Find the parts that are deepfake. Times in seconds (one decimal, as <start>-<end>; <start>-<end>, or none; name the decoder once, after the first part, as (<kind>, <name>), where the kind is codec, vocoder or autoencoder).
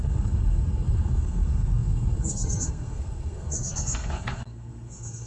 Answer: 0.0-5.3 (codec, SNAC)